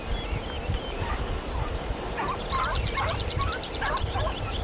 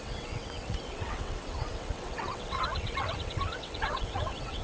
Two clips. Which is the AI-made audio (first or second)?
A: second